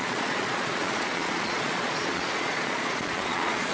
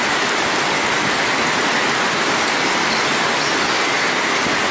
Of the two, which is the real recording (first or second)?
second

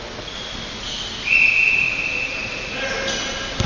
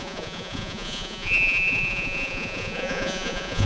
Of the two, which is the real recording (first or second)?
first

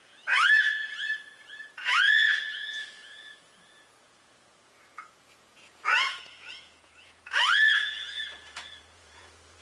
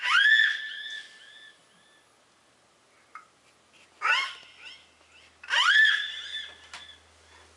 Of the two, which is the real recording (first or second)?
second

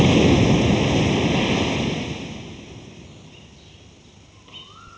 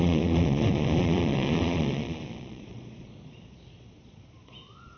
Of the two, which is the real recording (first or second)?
first